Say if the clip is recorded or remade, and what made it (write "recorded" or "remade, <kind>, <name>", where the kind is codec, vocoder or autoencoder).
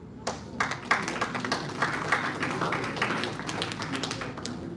recorded